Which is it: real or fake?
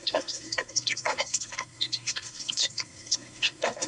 fake